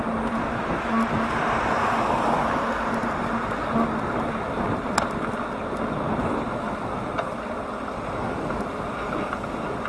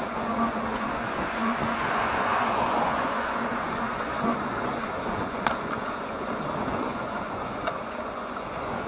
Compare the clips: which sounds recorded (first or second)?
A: first